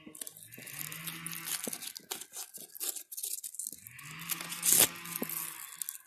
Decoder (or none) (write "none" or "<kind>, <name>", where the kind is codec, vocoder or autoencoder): none